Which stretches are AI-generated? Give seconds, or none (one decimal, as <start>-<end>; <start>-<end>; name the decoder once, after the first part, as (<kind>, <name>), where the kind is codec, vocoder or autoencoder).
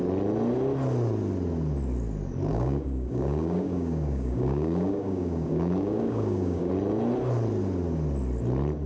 2.5-6.7 (codec, DAC)